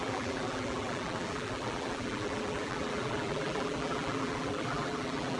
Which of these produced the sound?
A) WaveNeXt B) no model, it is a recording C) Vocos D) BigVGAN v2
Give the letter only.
D